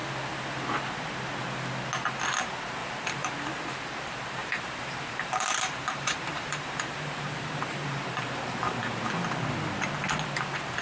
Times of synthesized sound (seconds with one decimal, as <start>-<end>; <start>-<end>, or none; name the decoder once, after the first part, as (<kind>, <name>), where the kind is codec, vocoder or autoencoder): 2.8-3.3 (vocoder, BigVGAN v2); 4.4-9.3